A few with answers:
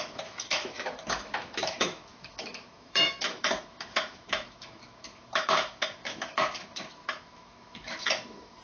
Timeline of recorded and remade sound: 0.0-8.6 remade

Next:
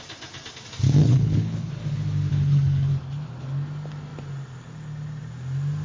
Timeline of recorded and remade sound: 0.0-1.0 recorded; 1.0-1.8 remade; 1.8-2.3 recorded; 2.3-2.9 remade; 2.9-5.8 recorded